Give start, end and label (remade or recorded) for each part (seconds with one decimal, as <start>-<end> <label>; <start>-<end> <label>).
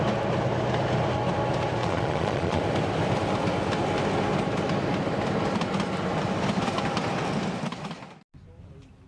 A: 0.0-1.8 recorded; 1.8-2.6 remade; 2.6-9.1 recorded